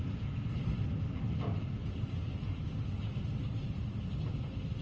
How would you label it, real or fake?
real